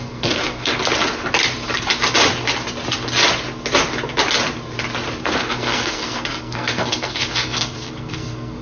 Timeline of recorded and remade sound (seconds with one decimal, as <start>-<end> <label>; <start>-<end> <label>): 0.0-0.7 remade; 0.7-5.2 recorded; 5.2-8.6 remade

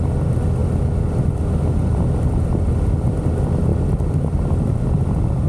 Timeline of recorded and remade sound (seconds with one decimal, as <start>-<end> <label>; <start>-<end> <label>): 0.0-5.5 recorded

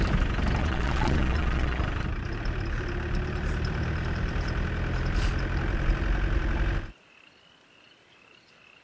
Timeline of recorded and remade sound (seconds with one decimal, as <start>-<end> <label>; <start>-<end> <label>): 0.0-0.6 recorded; 0.6-1.8 remade; 1.8-8.8 recorded

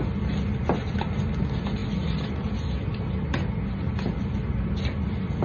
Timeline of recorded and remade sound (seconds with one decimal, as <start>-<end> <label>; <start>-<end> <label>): 0.0-5.4 recorded